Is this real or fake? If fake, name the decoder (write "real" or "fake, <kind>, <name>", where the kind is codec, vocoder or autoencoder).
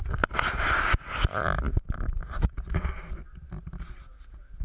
real